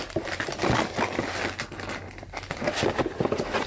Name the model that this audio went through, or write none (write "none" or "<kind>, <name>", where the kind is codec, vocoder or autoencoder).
none